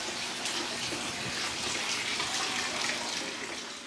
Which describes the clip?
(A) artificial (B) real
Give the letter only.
B